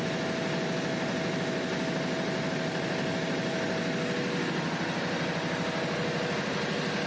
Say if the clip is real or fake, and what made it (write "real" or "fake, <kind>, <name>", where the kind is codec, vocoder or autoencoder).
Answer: real